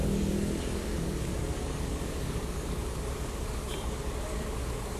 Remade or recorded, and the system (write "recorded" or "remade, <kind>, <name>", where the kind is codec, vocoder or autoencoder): remade, codec, DAC